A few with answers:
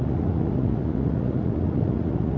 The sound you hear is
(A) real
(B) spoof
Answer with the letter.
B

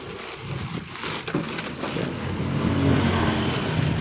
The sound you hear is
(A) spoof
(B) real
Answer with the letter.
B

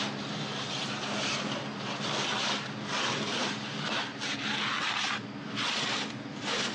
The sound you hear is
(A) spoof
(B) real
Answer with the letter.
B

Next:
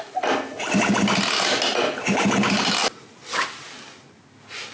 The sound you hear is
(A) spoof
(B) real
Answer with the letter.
B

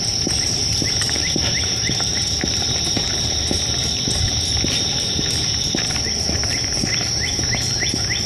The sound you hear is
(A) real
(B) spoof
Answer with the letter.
B